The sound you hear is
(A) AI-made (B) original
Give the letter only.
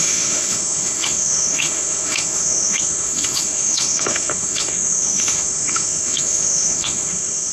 A